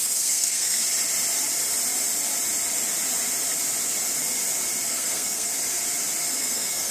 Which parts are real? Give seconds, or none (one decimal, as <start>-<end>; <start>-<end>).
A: 0.8-4.9; 5.5-6.4